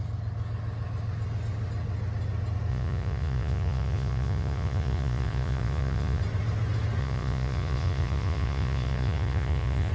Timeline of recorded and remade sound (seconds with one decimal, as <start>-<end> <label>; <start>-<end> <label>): 0.0-2.7 recorded; 2.7-6.2 remade; 6.2-7.0 recorded; 7.0-9.9 remade